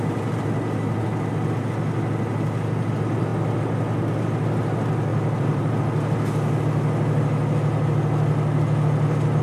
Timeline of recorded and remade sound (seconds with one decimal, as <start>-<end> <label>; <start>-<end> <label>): 0.0-5.1 recorded; 5.1-5.8 remade; 5.8-9.4 recorded